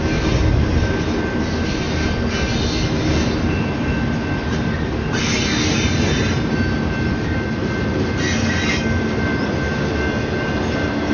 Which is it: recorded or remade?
recorded